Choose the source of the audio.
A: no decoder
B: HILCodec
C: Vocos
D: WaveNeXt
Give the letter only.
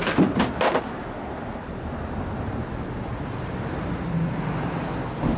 A